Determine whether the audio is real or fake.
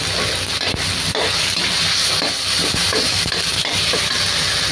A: real